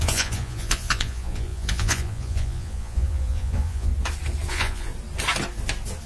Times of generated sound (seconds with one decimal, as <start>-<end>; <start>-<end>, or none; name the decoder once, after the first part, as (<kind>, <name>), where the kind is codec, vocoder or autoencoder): 0.0-3.9 (vocoder, Vocos); 4.5-4.9